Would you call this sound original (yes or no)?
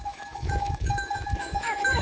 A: no